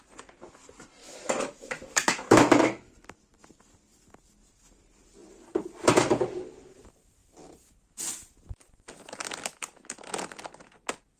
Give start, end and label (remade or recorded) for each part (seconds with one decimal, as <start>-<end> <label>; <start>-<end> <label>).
0.0-1.0 recorded; 1.0-2.9 remade; 2.9-11.2 recorded